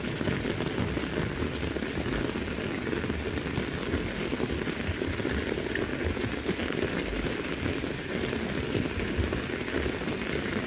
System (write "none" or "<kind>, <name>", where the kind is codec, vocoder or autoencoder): none